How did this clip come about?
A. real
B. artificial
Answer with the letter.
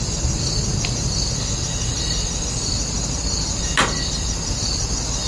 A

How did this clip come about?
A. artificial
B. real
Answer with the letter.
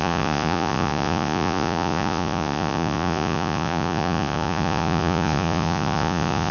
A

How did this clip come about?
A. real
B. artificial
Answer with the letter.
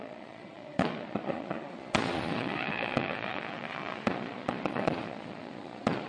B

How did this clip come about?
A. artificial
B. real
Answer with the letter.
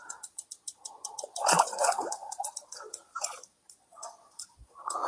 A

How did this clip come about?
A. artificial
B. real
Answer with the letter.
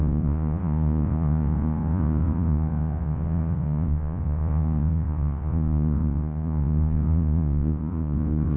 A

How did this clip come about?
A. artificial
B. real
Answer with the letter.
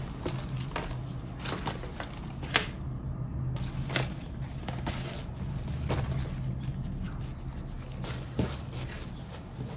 B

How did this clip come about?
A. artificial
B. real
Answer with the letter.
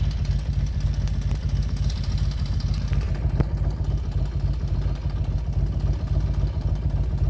B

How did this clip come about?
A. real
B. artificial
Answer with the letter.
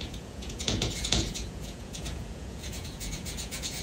B